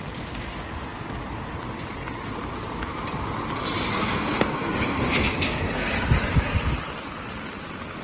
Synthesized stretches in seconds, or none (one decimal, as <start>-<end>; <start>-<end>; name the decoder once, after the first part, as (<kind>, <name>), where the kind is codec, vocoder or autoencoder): 3.9-5.9 (codec, SNAC)